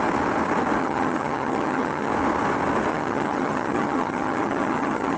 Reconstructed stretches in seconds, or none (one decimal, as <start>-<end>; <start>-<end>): 0.8-2.1; 2.9-5.2